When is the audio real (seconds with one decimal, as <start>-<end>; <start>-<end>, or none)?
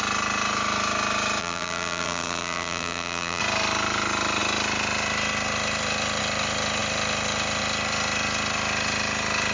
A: 0.0-1.4; 3.4-9.5